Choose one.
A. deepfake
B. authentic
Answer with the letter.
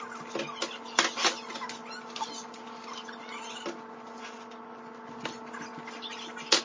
B